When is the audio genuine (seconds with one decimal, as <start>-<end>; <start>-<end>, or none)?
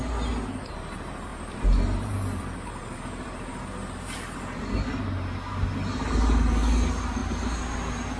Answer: 0.0-1.3; 4.2-8.2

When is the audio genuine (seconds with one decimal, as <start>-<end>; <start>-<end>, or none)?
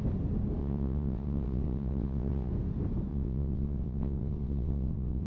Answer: 0.0-0.6; 2.5-3.1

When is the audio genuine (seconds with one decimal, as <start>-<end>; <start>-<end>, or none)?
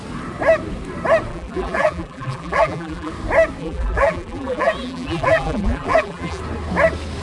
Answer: 0.0-1.3; 3.1-3.6; 6.4-7.2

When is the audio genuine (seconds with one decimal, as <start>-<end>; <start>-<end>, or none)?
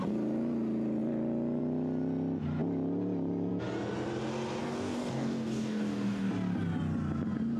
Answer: 0.0-4.6; 6.3-7.6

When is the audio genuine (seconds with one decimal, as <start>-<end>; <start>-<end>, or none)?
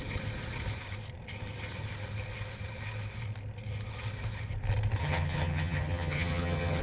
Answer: 0.0-5.0